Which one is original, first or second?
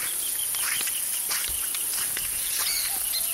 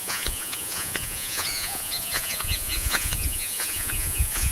first